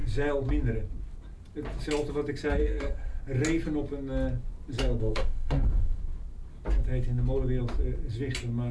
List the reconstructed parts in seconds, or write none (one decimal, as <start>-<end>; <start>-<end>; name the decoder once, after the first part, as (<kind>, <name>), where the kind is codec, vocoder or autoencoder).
2.6-3.2 (codec, SNAC); 5.0-6.0